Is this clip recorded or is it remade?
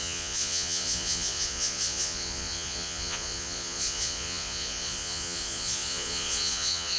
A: remade